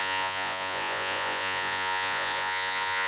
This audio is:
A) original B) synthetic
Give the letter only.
B